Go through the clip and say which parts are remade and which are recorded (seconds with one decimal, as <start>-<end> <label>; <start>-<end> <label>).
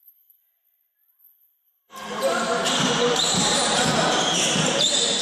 0.0-1.0 recorded; 1.0-4.1 remade; 4.1-5.2 recorded